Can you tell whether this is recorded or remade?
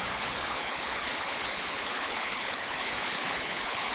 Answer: remade